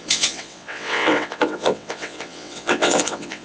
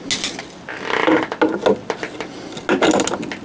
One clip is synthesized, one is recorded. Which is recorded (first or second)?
second